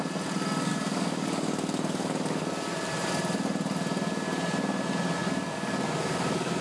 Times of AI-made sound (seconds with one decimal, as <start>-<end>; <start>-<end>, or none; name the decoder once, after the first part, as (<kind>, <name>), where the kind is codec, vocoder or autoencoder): 0.7-2.4 (codec, DAC); 5.2-6.6